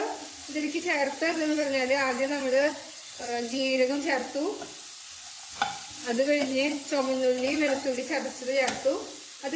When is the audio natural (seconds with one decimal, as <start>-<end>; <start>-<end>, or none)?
0.0-0.6; 4.1-6.1; 8.0-9.6